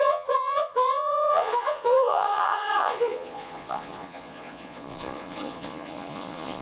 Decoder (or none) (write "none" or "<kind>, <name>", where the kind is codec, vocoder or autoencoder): vocoder, Vocos